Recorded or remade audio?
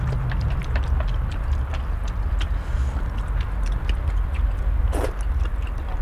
recorded